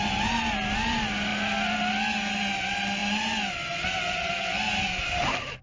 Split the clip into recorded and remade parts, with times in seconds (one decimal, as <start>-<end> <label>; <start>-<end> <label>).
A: 0.0-5.6 recorded